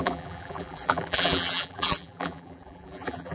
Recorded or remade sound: remade